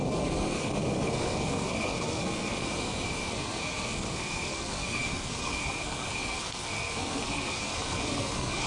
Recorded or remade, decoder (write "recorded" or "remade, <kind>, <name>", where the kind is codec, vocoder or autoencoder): remade, codec, SNAC